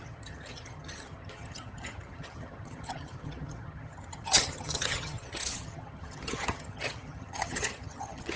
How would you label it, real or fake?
fake